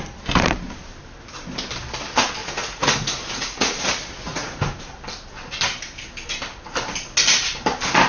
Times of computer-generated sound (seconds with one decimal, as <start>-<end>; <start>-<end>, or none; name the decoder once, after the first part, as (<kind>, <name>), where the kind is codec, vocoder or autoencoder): 2.4-3.8 (vocoder, Vocos); 4.3-4.9